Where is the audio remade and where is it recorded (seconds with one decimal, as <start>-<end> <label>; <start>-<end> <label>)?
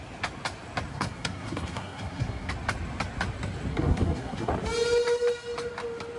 0.0-0.9 recorded; 0.9-2.5 remade; 2.5-3.7 recorded; 3.7-4.5 remade; 4.5-6.2 recorded